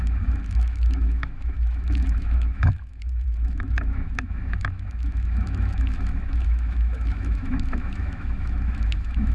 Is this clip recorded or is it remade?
remade